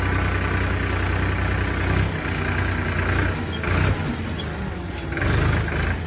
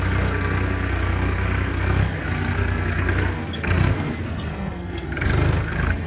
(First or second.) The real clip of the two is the first